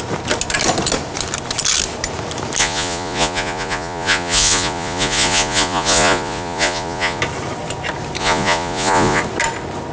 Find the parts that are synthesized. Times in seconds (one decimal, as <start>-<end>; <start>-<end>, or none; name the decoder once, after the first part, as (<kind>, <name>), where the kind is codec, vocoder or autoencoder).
2.6-7.2 (vocoder, Vocos); 8.2-9.2